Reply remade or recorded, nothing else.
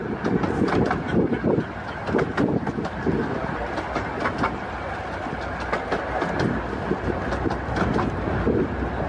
recorded